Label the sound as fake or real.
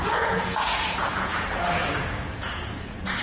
fake